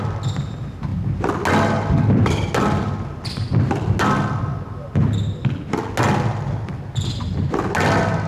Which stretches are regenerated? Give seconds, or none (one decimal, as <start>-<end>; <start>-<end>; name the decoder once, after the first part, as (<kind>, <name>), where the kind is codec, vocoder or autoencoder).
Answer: none